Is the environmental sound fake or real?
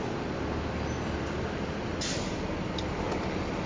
real